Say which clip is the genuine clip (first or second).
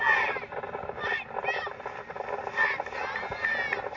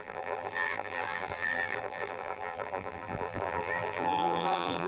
first